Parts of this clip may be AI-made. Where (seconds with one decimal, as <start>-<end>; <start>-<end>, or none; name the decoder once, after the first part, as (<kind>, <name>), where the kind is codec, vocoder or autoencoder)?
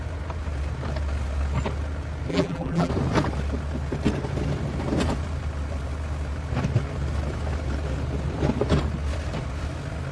2.3-2.9 (vocoder, BigVGAN v2)